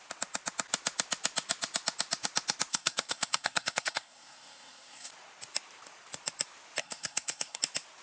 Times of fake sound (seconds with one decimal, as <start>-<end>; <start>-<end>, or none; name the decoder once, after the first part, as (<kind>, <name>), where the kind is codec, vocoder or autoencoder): 2.7-5.1 (codec, SNAC); 6.8-7.6